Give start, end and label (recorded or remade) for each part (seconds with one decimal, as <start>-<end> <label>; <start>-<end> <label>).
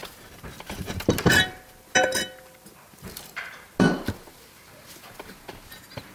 0.0-6.1 recorded